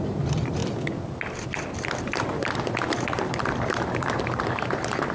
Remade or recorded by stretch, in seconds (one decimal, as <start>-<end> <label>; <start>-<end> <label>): 0.0-0.6 remade; 0.6-2.0 recorded; 2.0-5.1 remade